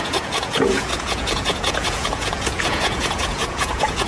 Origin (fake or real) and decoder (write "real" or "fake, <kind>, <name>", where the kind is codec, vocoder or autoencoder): fake, vocoder, Vocos